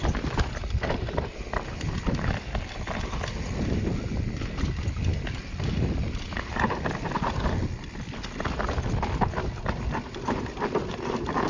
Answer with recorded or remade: recorded